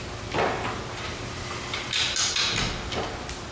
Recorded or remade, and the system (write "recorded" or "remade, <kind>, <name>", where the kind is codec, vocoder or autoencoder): recorded